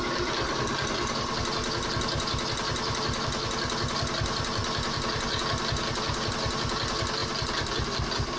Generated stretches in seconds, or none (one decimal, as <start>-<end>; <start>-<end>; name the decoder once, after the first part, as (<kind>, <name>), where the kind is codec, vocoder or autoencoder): none